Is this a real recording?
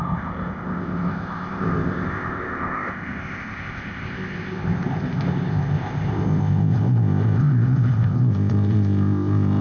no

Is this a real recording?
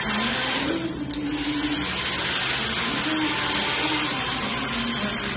yes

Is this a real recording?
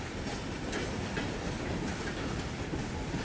yes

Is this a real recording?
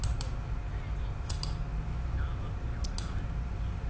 yes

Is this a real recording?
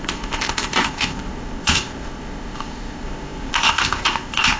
no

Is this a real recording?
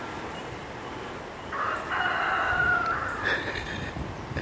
yes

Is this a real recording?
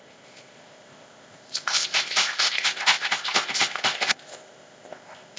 no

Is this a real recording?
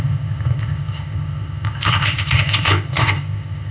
no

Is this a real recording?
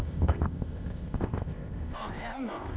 no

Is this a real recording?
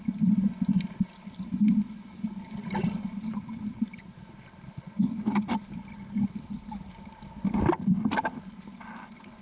yes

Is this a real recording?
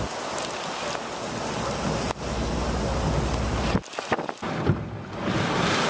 yes